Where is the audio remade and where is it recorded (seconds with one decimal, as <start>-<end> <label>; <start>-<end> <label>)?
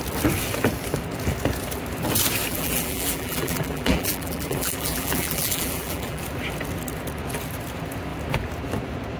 0.0-2.5 recorded; 2.5-6.2 remade; 6.2-9.2 recorded